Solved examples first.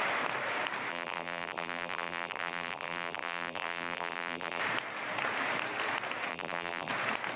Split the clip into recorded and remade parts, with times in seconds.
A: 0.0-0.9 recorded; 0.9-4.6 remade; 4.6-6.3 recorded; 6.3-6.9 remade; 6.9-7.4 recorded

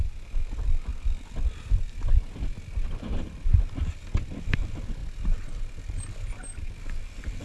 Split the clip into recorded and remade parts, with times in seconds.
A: 0.0-0.9 remade; 0.9-4.4 recorded; 4.4-5.0 remade; 5.0-7.4 recorded